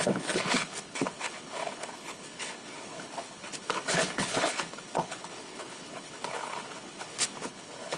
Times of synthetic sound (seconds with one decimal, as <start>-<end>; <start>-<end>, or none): 0.0-8.0